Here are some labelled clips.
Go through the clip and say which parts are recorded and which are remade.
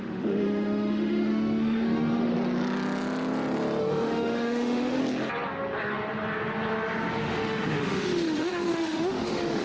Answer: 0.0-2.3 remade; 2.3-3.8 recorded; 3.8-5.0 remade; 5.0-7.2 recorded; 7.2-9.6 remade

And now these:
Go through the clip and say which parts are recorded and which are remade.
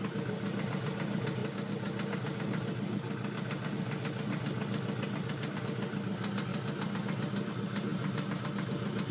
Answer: 0.0-9.1 recorded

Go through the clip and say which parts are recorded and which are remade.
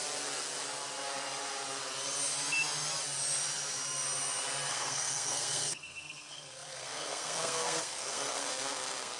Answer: 0.0-4.7 recorded; 4.7-9.2 remade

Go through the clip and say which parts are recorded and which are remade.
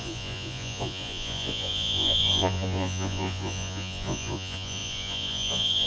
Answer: 0.0-5.9 remade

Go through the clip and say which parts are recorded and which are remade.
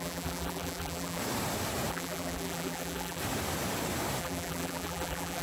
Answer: 0.0-1.2 remade; 1.2-1.9 recorded; 1.9-3.2 remade; 3.2-4.2 recorded; 4.2-5.4 remade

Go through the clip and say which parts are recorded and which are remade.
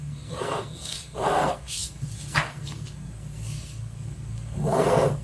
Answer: 0.0-5.2 remade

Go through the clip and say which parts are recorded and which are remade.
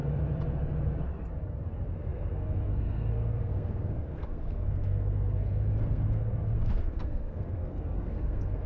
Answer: 0.0-1.7 recorded; 1.7-8.7 remade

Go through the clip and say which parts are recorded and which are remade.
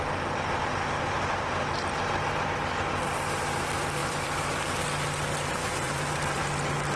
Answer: 0.0-4.0 recorded; 4.0-4.8 remade; 4.8-5.6 recorded; 5.6-6.4 remade; 6.4-7.0 recorded